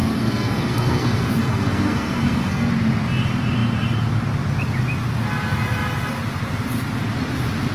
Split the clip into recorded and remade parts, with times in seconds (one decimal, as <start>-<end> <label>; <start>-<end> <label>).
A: 0.0-2.7 remade; 2.7-7.7 recorded